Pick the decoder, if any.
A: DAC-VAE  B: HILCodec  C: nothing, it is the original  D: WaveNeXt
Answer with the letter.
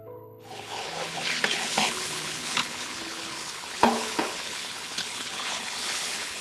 B